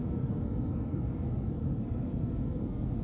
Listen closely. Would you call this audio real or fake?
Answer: fake